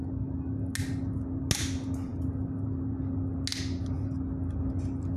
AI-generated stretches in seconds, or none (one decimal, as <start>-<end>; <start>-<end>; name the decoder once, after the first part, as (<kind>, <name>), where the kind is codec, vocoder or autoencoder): none